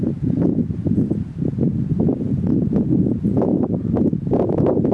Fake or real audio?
real